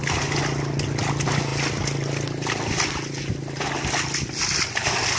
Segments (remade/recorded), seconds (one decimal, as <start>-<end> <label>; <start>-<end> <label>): 0.0-5.2 recorded